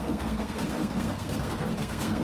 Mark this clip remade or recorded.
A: remade